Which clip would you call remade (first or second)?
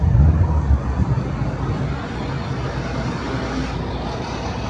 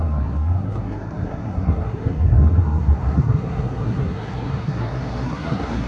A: second